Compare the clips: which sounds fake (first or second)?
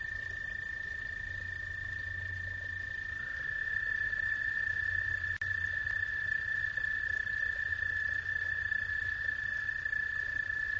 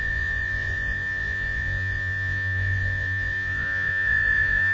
second